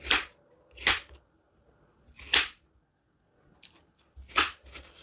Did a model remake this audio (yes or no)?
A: no